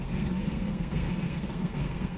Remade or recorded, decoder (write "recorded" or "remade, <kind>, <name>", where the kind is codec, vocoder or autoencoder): remade, codec, SNAC